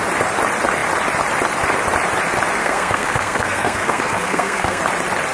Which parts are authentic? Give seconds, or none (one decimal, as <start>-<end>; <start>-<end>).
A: 0.0-2.6; 4.8-5.3